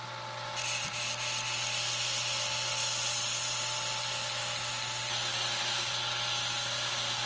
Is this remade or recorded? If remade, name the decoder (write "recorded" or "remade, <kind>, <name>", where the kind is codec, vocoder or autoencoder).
recorded